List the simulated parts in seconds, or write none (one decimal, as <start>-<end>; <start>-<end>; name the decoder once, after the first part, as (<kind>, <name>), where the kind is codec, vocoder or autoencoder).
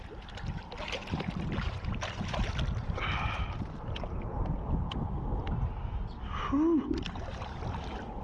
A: none